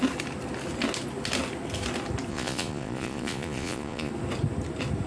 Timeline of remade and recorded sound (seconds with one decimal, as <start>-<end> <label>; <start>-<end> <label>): 0.0-2.3 recorded; 2.3-4.1 remade; 4.1-5.1 recorded